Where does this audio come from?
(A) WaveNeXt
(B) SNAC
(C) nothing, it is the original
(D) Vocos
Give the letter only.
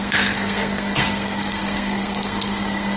B